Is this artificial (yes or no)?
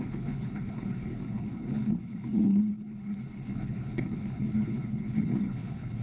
yes